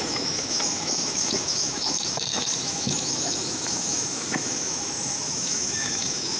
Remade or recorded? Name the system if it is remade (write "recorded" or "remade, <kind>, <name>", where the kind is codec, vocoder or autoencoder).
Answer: remade, autoencoder, DAC-VAE